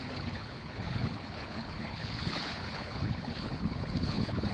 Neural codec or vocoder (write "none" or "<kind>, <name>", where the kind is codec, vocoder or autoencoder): codec, HILCodec